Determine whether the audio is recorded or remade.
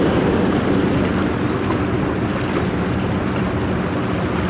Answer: recorded